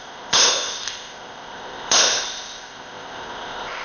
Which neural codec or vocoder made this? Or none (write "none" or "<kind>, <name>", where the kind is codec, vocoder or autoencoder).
codec, ZipCodec